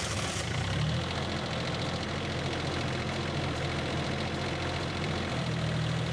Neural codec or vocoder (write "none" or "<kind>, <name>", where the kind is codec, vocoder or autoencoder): vocoder, BigVGAN v2